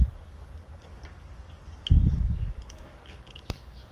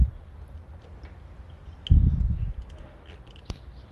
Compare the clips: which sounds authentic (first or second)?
second